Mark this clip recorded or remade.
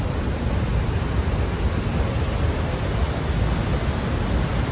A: recorded